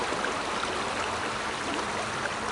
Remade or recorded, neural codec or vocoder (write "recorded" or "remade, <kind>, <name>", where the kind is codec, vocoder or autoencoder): recorded